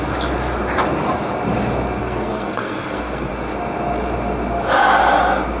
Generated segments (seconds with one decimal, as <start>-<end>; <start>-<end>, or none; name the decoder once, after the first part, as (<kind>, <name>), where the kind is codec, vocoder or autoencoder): 2.0-3.3 (codec, SNAC)